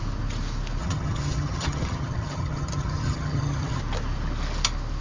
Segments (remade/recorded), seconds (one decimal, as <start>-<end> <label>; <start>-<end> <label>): 0.0-0.8 recorded; 0.8-3.8 remade; 3.8-5.0 recorded